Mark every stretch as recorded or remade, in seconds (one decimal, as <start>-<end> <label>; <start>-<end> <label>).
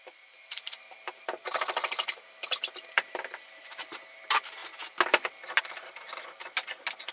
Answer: 0.0-4.6 remade; 4.6-5.6 recorded; 5.6-6.1 remade; 6.1-7.1 recorded